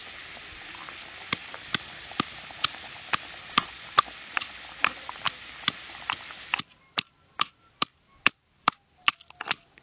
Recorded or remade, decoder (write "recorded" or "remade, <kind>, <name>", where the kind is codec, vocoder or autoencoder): recorded